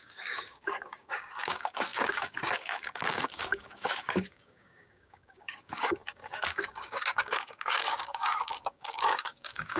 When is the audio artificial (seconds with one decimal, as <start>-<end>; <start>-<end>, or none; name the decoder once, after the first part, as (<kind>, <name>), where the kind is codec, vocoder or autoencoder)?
0.0-9.8 (codec, DAC)

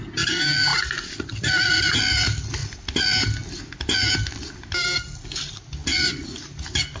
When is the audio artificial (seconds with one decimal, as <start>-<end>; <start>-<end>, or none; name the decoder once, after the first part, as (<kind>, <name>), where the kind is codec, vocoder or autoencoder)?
none

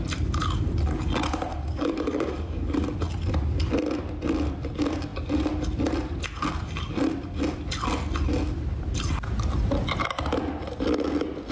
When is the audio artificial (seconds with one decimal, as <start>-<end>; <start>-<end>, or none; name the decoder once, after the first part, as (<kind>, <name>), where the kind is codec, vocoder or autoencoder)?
1.5-2.7 (codec, DAC)

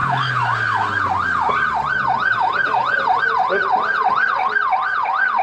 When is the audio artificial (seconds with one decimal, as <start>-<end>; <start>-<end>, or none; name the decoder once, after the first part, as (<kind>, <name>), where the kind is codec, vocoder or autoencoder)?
none